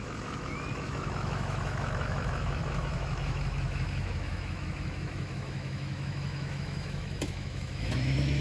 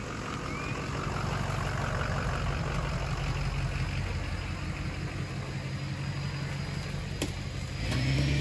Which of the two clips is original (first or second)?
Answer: second